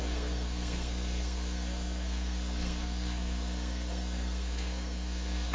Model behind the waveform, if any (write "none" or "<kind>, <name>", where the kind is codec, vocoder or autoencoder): codec, SNAC